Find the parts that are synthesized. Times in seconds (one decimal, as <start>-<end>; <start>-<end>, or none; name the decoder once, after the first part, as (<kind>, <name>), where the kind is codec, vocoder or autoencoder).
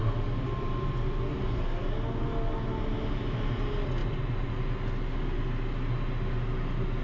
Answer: 4.0-4.5 (vocoder, BigVGAN v2)